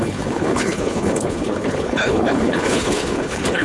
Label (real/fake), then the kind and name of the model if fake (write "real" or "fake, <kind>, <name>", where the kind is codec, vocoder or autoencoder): fake, codec, HILCodec